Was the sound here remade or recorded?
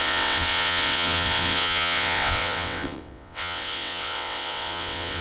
remade